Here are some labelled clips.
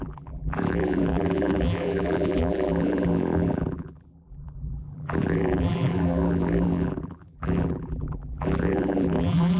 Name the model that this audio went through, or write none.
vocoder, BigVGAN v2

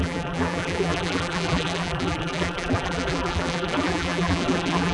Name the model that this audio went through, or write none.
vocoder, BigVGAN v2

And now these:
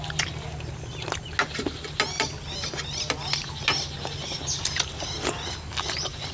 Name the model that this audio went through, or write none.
none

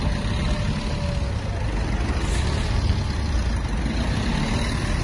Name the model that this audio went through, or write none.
none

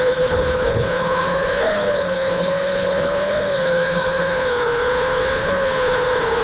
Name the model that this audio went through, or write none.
codec, HILCodec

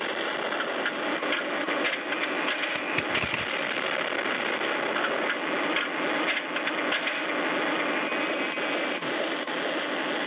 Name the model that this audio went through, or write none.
none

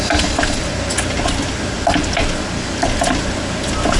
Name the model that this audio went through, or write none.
none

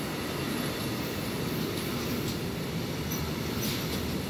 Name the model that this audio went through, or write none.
none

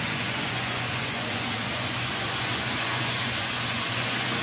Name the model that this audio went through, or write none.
vocoder, Vocos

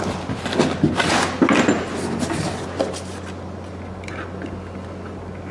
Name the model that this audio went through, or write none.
none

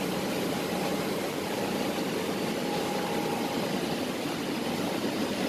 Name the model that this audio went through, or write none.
none